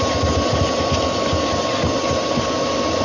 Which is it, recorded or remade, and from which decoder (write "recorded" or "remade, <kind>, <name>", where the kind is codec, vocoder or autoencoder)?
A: recorded